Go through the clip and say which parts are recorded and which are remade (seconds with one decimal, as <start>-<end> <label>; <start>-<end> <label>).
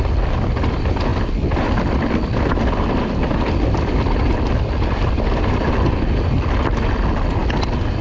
0.0-7.4 remade; 7.4-8.0 recorded